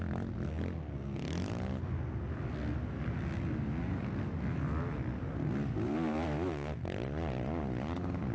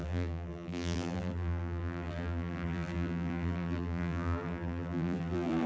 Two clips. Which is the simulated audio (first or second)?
second